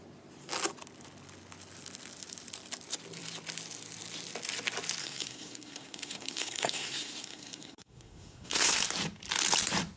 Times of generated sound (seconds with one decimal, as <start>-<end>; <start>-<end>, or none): 5.0-8.8